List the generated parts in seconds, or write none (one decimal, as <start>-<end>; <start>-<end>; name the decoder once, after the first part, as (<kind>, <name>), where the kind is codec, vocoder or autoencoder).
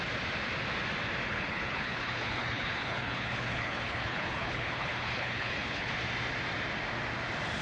1.3-5.9 (codec, HILCodec)